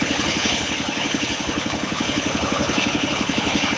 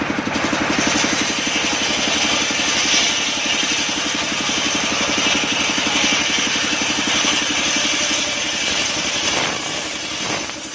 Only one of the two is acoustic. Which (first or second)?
second